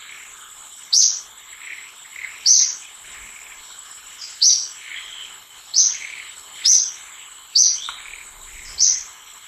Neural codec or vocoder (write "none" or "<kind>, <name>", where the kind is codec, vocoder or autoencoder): codec, HILCodec